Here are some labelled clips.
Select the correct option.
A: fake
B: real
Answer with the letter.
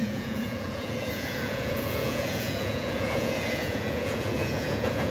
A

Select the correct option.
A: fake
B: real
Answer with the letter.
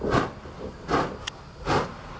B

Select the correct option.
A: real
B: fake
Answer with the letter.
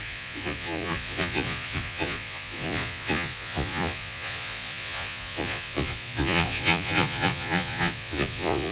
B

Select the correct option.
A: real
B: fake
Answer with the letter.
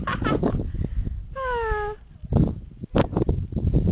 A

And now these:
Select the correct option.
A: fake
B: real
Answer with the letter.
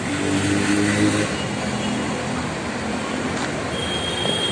B